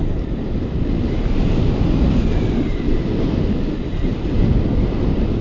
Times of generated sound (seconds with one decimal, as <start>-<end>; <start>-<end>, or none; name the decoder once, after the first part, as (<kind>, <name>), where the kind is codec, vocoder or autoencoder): none